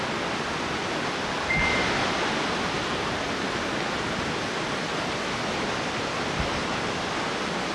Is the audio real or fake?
real